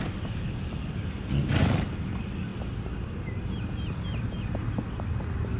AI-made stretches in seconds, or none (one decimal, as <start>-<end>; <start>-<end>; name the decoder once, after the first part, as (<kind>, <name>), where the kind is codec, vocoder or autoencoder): none